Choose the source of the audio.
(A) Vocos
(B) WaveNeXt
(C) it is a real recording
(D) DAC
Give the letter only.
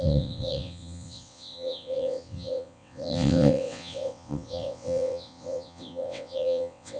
B